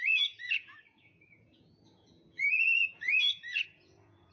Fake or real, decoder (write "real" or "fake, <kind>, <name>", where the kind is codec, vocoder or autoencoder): fake, vocoder, Vocos